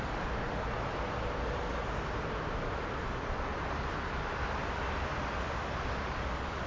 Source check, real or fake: real